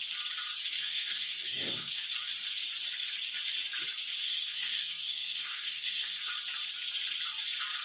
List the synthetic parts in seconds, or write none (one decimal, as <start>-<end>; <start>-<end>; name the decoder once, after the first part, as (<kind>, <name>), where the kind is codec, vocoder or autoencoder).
0.8-2.0 (codec, SNAC); 4.2-6.3